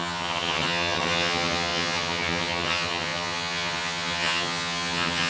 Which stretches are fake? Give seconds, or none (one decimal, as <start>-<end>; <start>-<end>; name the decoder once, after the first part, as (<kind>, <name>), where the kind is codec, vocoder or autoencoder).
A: 0.0-5.3 (vocoder, HiFi-GAN)